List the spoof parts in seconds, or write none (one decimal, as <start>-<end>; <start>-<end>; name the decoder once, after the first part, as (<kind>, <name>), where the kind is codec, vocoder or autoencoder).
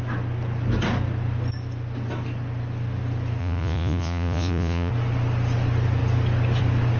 3.4-4.9 (vocoder, Vocos)